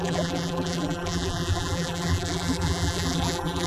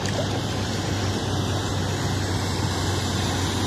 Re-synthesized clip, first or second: first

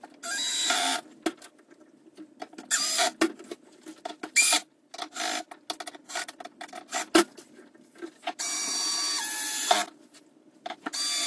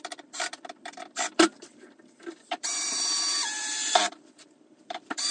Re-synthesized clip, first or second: second